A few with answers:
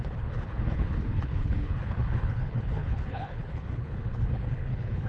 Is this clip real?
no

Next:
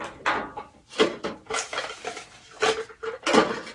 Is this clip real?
yes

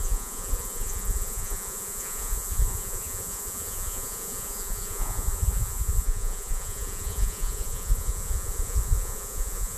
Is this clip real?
no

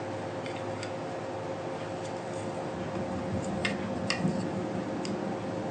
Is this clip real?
yes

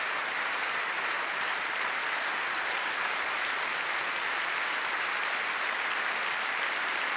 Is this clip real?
no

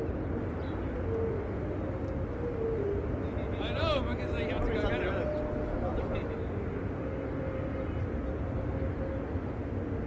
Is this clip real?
yes